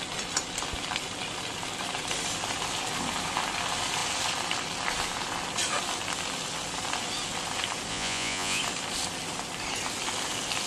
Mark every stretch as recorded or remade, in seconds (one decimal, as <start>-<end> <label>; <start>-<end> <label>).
0.0-7.9 recorded; 7.9-8.6 remade; 8.6-10.7 recorded

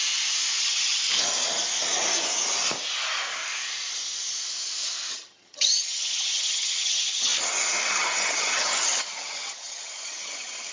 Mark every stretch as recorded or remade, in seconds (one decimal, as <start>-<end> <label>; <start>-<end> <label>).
0.0-0.6 recorded; 0.6-1.0 remade; 1.0-5.1 recorded; 5.1-7.3 remade; 7.3-7.9 recorded; 7.9-10.7 remade

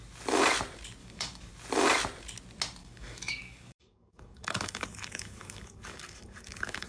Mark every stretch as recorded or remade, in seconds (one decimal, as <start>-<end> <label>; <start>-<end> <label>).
0.0-1.0 recorded; 1.0-1.5 remade; 1.5-2.8 recorded; 2.8-6.9 remade

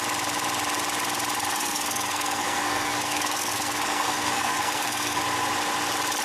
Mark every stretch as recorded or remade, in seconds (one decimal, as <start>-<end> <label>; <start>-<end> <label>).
0.0-1.5 recorded; 1.5-5.2 remade; 5.2-6.2 recorded